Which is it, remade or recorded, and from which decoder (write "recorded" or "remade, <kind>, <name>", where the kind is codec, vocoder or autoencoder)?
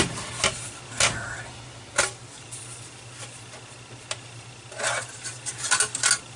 recorded